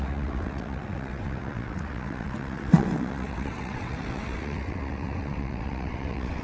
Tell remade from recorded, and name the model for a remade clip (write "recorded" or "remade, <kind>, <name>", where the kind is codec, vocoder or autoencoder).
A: remade, vocoder, WaveNeXt